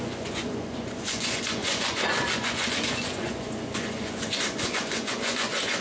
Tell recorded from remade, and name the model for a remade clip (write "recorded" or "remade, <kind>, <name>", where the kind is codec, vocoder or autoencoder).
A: remade, vocoder, Vocos